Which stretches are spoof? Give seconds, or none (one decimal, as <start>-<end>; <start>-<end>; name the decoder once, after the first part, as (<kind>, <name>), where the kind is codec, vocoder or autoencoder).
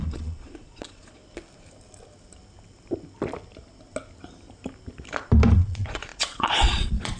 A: 0.0-1.2 (vocoder, Vocos); 5.5-7.2